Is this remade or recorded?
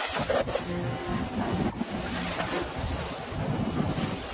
recorded